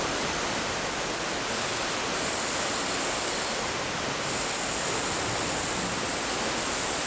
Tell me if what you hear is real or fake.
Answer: real